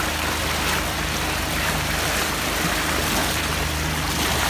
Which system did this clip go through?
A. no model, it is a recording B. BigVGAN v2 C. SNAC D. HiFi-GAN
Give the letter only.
A